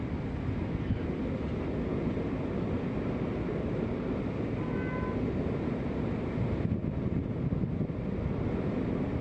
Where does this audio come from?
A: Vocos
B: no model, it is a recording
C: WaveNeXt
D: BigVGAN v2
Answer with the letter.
B